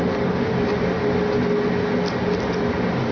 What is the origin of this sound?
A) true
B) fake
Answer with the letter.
A